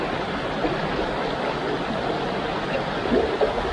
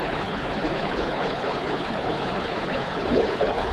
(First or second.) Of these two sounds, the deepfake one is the second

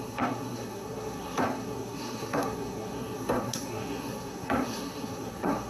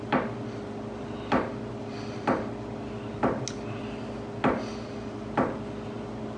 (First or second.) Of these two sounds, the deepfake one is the first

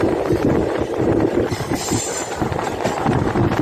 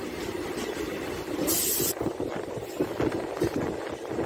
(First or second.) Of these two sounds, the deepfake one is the first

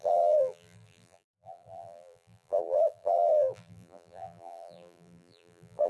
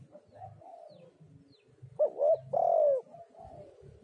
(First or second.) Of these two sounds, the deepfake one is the first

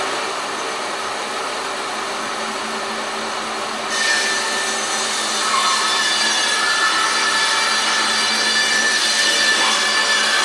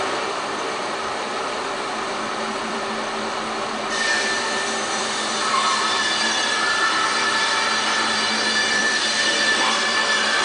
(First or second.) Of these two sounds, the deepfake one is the second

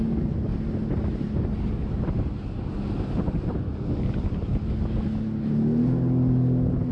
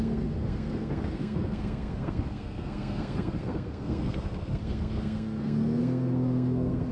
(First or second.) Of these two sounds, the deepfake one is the second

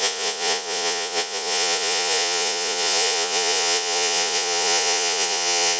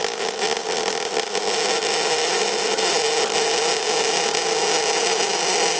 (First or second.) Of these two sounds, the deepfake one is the first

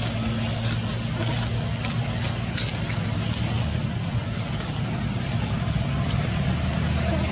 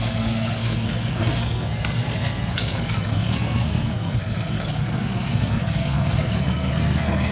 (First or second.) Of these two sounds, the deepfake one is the second